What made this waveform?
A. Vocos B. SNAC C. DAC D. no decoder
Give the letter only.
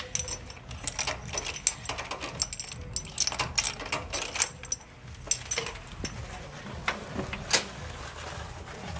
D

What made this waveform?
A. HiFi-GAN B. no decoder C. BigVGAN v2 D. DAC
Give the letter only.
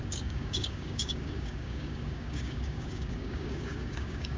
D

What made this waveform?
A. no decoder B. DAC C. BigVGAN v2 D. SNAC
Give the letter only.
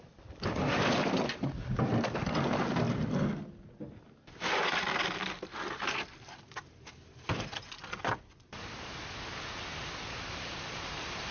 A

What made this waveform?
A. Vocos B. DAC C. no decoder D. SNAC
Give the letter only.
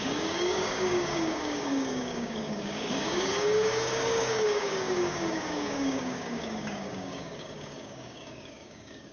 B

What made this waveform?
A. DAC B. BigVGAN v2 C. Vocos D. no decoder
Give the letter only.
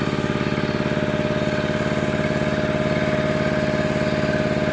D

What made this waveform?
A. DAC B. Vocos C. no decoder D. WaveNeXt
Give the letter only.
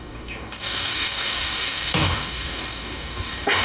A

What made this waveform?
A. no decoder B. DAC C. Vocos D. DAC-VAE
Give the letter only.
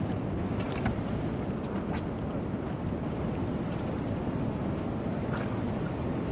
A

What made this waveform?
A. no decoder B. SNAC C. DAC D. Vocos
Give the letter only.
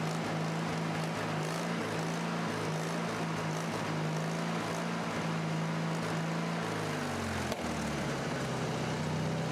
A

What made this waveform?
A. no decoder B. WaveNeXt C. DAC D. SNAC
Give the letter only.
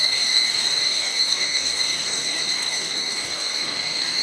C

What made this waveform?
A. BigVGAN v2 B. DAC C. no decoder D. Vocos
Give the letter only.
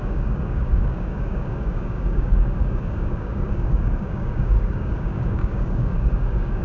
B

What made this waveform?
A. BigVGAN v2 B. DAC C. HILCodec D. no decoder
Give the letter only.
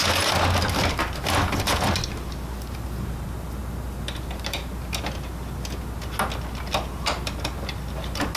D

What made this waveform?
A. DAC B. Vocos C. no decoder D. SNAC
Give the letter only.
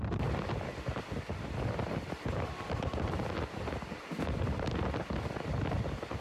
C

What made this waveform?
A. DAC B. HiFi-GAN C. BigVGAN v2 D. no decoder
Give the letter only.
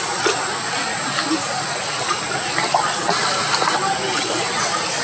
D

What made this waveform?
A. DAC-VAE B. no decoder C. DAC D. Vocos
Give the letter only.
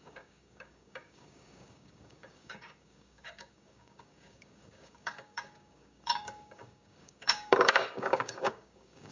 C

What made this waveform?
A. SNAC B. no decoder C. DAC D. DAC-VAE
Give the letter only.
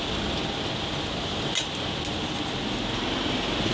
B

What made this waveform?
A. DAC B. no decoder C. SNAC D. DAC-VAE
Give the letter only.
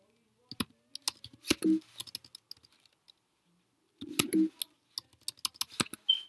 B